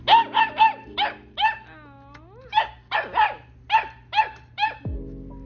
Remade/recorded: recorded